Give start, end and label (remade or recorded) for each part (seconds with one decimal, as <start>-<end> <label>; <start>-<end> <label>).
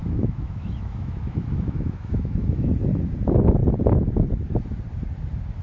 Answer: 0.0-2.7 remade; 2.7-5.6 recorded